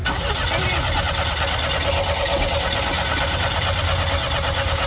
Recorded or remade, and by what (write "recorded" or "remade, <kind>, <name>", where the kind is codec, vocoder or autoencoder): recorded